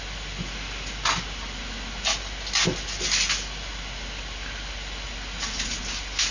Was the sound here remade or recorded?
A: recorded